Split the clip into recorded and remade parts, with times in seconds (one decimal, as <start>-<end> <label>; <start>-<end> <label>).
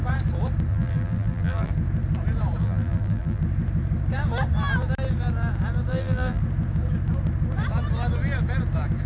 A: 0.0-0.7 recorded; 0.7-1.7 remade; 1.7-2.6 recorded; 2.6-3.4 remade; 3.4-5.9 recorded; 5.9-6.4 remade; 6.4-9.1 recorded